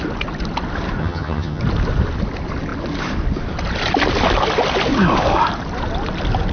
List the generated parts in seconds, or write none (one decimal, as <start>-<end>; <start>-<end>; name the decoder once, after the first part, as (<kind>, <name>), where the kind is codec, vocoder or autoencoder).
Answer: 1.0-1.6 (vocoder, HiFi-GAN)